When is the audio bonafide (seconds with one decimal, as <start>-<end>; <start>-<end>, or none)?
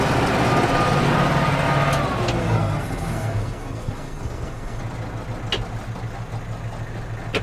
0.0-2.4; 4.8-7.4